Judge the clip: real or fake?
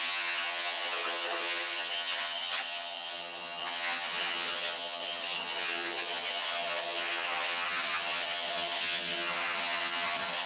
fake